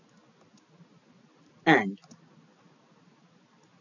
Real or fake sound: real